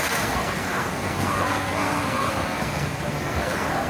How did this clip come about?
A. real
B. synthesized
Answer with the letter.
B